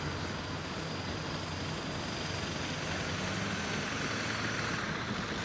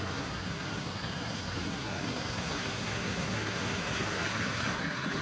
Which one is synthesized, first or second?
second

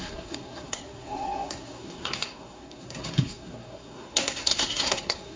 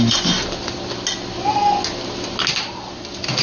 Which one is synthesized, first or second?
first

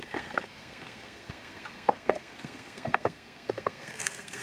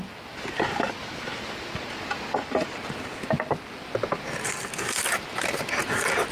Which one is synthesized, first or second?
first